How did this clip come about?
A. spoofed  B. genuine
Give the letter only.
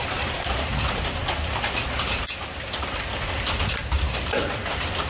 B